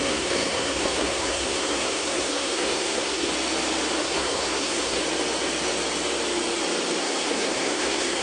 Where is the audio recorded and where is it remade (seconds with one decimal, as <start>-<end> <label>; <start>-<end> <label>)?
0.0-3.3 remade; 3.3-4.0 recorded; 4.0-5.0 remade; 5.0-7.0 recorded; 7.0-8.2 remade

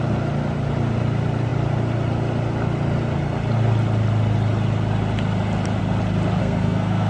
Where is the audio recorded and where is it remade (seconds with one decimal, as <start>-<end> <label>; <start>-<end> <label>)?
0.0-6.4 recorded; 6.4-7.1 remade

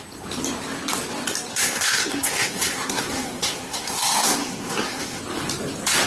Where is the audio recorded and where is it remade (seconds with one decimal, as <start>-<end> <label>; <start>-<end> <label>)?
0.0-1.5 recorded; 1.5-5.2 remade; 5.2-6.1 recorded

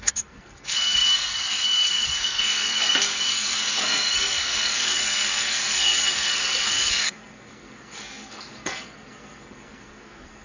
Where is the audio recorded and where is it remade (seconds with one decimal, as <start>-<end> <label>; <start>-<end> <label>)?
0.0-10.4 remade

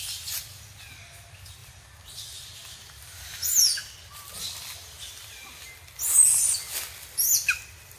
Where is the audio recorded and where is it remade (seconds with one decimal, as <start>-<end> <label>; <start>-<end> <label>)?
0.0-8.0 recorded

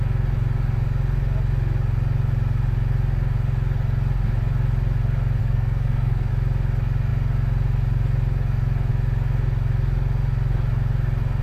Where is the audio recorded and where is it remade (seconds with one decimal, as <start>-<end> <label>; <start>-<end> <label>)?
0.0-5.4 recorded; 5.4-6.3 remade; 6.3-11.4 recorded

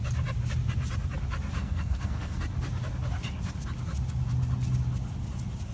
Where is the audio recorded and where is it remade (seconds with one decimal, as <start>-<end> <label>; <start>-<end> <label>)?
0.0-1.6 recorded; 1.6-2.4 remade; 2.4-5.7 recorded

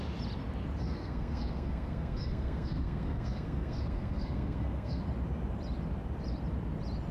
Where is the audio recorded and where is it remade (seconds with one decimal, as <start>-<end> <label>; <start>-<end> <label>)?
0.0-0.8 recorded; 0.8-5.0 remade; 5.0-7.1 recorded